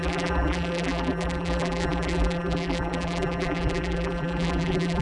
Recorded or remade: remade